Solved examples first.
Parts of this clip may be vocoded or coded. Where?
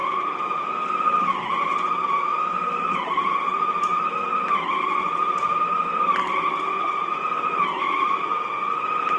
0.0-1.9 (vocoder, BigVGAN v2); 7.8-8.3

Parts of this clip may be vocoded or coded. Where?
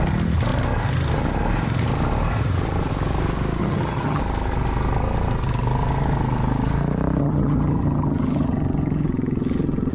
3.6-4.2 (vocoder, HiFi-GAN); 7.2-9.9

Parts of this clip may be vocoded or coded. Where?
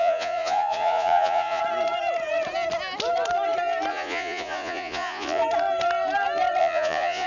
0.0-1.6 (vocoder, Vocos); 3.9-5.4; 6.6-7.3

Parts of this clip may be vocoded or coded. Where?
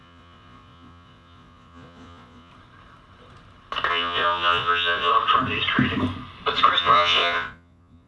0.0-2.5 (vocoder, Vocos); 3.9-5.1; 6.8-8.1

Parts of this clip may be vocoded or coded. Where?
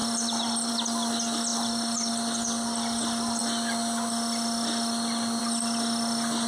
0.0-0.7 (vocoder, BigVGAN v2); 1.5-2.1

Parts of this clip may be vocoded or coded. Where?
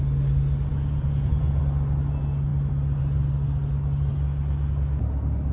0.7-1.6 (vocoder, Vocos)